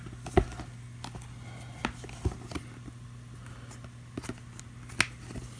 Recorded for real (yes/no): yes